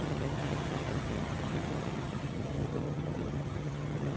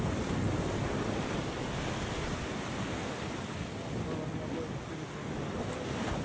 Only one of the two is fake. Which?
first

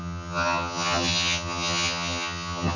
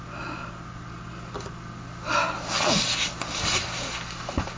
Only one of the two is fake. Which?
first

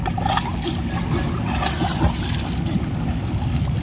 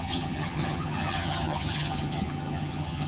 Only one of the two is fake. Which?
second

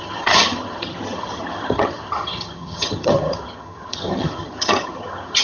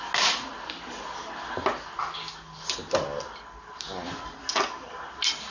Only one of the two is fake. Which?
first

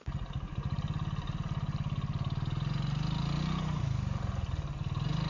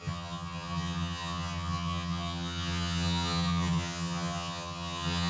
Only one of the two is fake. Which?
second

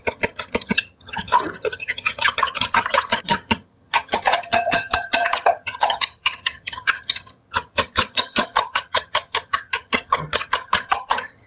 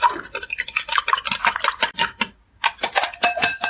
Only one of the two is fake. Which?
first